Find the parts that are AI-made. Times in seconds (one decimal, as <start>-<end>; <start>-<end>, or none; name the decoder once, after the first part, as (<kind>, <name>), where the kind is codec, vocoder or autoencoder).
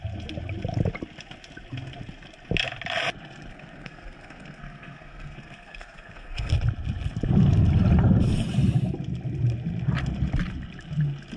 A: 3.5-6.5 (codec, SNAC)